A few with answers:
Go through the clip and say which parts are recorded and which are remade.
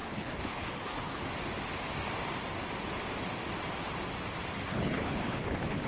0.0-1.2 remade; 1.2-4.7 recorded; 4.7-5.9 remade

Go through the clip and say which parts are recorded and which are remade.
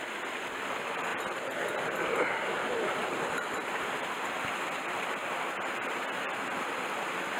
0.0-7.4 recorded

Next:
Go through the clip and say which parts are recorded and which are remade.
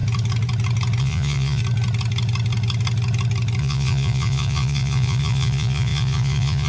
0.0-1.0 recorded; 1.0-1.6 remade; 1.6-3.6 recorded; 3.6-6.7 remade